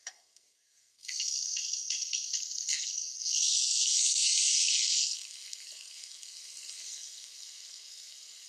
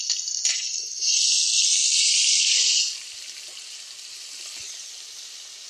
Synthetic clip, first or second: first